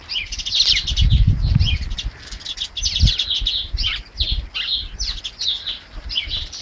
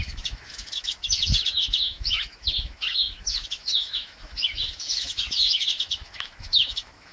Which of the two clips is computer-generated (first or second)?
second